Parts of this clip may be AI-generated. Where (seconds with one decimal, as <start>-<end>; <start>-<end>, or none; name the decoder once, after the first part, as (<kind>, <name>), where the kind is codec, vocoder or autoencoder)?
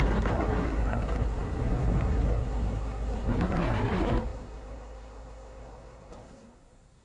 0.0-7.0 (codec, SNAC)